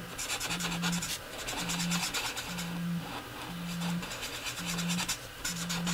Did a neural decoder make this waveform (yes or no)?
yes